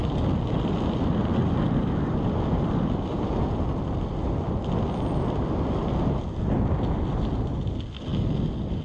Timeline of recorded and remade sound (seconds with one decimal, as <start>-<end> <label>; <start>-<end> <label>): 0.0-8.8 recorded

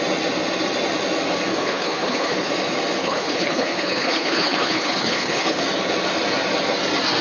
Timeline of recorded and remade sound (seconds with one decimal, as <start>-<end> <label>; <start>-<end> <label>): 0.0-1.5 recorded; 1.5-2.5 remade; 2.5-3.0 recorded; 3.0-5.6 remade; 5.6-7.2 recorded